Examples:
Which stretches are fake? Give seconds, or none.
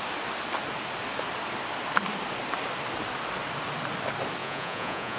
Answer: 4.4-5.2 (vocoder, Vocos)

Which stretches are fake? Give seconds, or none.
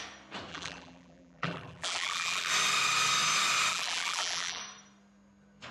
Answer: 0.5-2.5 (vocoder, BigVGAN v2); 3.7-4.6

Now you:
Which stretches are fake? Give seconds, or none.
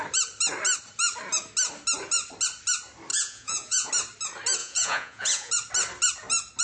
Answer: 3.1-3.9 (vocoder, Vocos); 4.6-5.5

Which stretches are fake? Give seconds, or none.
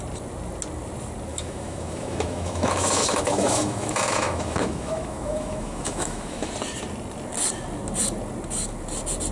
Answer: 1.3-6.5 (autoencoder, DAC-VAE)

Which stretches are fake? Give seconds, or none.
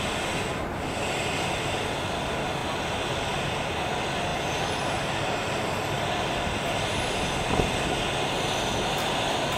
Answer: none